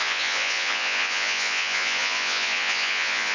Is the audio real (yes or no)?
no